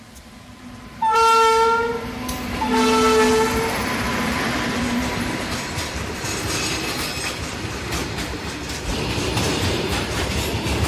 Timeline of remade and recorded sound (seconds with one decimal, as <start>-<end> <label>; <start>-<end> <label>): 0.0-4.1 recorded; 4.1-6.6 remade; 6.6-8.0 recorded; 8.0-8.6 remade; 8.6-9.5 recorded; 9.5-10.4 remade; 10.4-10.9 recorded